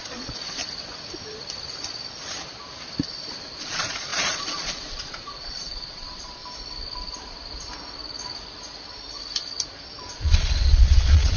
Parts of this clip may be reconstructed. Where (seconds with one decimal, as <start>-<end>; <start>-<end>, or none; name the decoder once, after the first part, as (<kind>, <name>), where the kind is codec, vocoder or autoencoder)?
0.0-0.6 (vocoder, Vocos); 3.6-6.4; 10.0-11.4